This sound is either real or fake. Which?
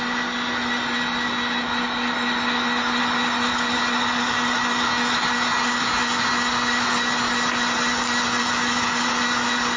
real